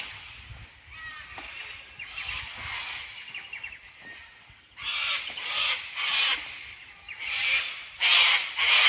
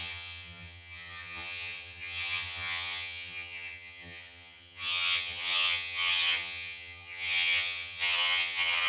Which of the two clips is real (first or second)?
first